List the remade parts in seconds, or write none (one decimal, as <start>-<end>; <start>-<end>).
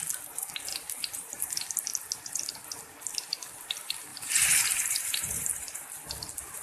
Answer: 0.7-1.5; 4.1-5.8